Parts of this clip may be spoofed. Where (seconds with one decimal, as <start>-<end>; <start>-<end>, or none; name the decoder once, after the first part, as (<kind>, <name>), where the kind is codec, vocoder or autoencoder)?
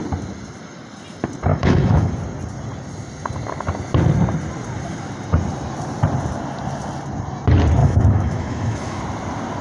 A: 1.5-2.1 (autoencoder, DAC-VAE); 7.8-9.0